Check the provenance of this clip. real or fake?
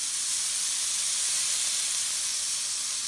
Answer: real